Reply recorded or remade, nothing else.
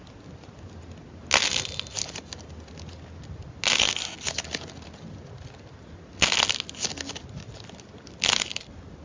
recorded